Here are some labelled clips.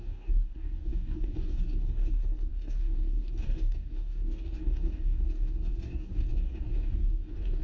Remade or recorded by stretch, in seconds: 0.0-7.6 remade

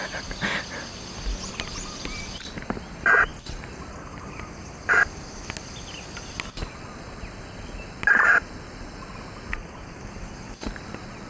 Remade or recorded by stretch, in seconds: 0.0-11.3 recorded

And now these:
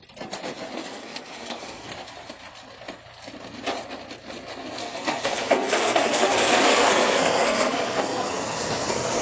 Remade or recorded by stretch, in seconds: 0.0-0.8 recorded; 0.8-1.9 remade; 1.9-4.8 recorded; 4.8-9.2 remade